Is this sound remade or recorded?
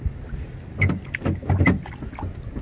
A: recorded